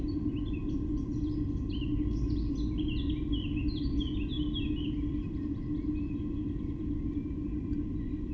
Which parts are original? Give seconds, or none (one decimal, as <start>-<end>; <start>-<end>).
0.0-8.3